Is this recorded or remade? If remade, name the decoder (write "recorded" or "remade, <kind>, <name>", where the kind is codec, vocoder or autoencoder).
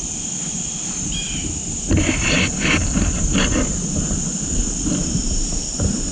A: recorded